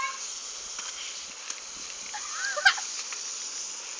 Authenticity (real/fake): real